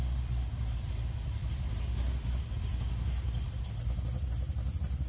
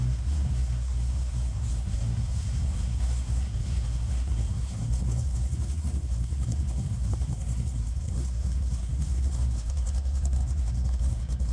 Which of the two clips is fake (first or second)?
second